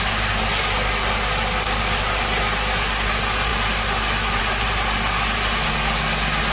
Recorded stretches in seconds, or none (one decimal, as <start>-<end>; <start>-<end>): 0.0-6.5